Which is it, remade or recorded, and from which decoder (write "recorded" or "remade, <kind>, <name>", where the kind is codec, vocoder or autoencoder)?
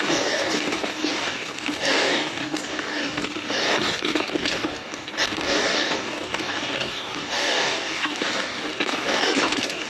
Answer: remade, codec, DAC